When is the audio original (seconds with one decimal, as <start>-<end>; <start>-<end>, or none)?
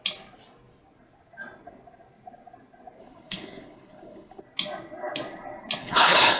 0.0-3.0; 4.4-5.8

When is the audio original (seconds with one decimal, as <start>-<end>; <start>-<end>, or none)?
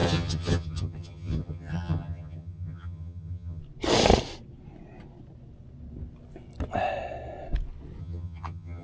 3.6-8.0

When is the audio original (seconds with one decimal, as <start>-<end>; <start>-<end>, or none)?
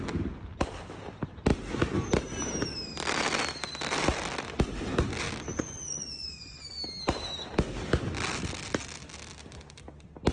0.0-5.5; 6.6-10.3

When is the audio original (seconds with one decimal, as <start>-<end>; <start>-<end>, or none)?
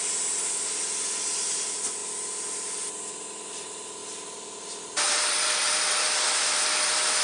2.0-3.1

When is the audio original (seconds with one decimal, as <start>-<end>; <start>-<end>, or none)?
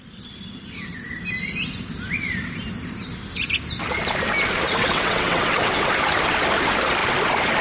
0.0-4.8; 5.9-7.6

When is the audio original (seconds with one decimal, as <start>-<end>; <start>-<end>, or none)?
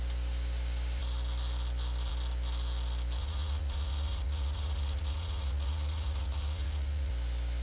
0.0-3.2; 7.1-7.6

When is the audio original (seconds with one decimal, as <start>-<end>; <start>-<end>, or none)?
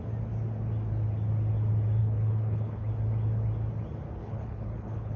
0.0-2.0; 2.9-4.2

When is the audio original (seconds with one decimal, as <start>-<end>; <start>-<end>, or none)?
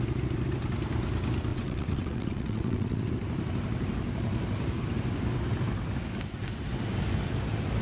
0.0-1.5; 3.1-7.8